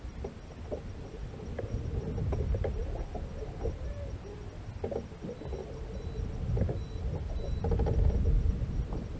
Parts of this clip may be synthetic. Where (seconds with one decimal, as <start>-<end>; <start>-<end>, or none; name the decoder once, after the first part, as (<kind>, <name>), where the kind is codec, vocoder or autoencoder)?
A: none